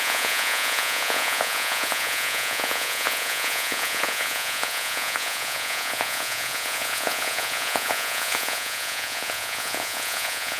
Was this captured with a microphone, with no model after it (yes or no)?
no